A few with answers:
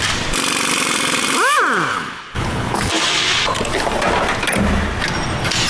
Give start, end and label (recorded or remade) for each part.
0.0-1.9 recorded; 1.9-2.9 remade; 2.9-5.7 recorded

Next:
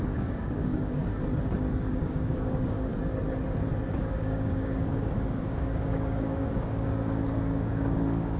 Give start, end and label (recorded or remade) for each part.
0.0-1.0 remade; 1.0-1.7 recorded; 1.7-2.9 remade; 2.9-3.9 recorded; 3.9-8.4 remade

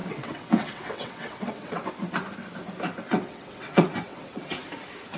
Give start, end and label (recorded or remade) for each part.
0.0-1.9 remade; 1.9-3.1 recorded; 3.1-4.6 remade; 4.6-5.2 recorded

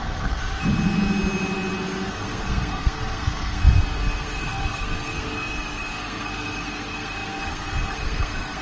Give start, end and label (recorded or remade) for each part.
0.0-0.4 remade; 0.4-2.1 recorded; 2.1-8.6 remade

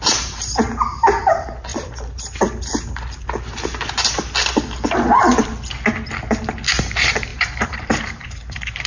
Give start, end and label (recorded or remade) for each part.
0.0-1.7 remade; 1.7-6.8 recorded; 6.8-8.9 remade